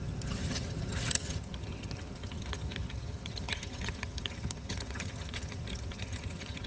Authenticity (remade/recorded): remade